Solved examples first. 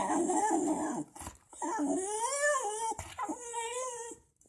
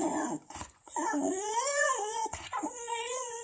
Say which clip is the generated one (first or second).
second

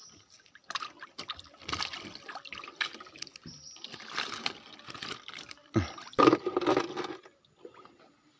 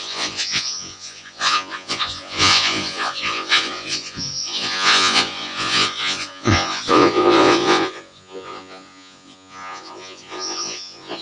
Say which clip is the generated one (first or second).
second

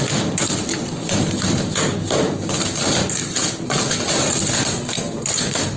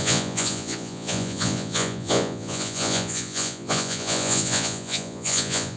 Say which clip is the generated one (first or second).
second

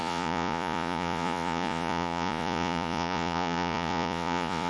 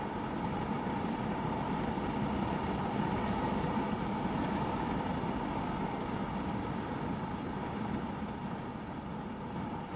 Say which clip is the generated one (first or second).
first